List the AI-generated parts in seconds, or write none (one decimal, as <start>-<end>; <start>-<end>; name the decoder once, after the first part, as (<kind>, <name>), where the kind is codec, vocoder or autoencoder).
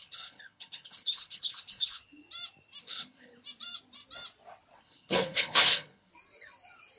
0.0-2.0 (codec, HILCodec); 2.8-3.3; 4.8-6.1